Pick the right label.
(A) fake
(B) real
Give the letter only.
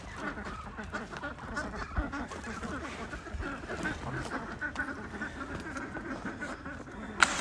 B